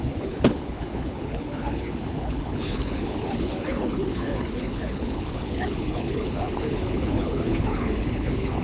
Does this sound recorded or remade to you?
remade